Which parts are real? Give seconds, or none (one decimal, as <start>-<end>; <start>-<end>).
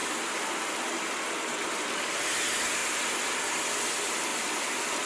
0.5-2.8; 3.8-4.3